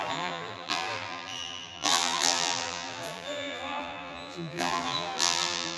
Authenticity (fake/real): fake